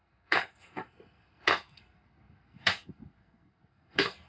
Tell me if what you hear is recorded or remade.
remade